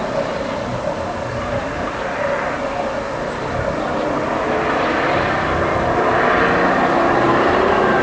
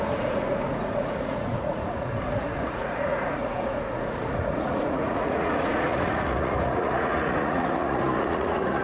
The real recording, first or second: first